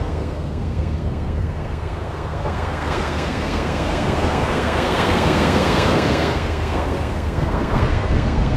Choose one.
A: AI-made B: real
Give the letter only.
A